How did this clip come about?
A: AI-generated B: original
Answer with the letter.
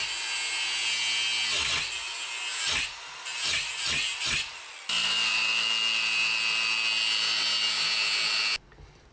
B